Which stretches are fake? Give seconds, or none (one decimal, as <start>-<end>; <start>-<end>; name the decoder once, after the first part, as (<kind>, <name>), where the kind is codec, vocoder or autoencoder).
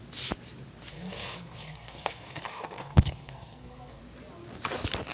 0.9-4.0 (codec, SNAC)